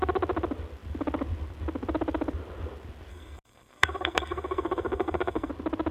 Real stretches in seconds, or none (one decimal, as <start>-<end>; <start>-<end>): 0.0-3.1; 5.5-5.9